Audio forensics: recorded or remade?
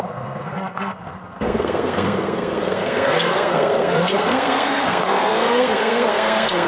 remade